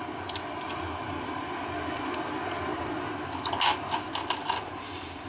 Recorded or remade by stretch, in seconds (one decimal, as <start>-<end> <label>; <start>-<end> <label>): 0.0-5.3 recorded